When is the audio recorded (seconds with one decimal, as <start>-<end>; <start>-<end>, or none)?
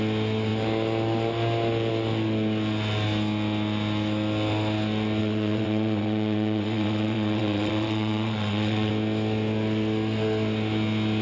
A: 0.0-5.2; 8.9-11.2